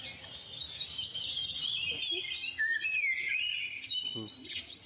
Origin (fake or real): real